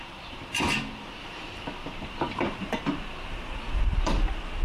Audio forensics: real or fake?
fake